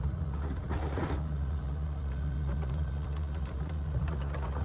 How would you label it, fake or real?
fake